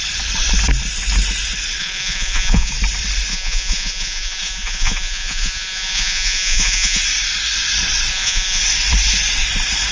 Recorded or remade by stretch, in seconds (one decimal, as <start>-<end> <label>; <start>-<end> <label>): 0.0-1.8 recorded; 1.8-2.7 remade; 2.7-3.3 recorded; 3.3-7.0 remade; 7.0-8.1 recorded; 8.1-8.6 remade; 8.6-9.9 recorded